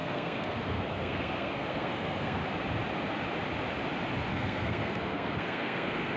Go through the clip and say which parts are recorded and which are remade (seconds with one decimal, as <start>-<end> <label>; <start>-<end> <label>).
0.0-2.4 remade; 2.4-4.3 recorded; 4.3-6.2 remade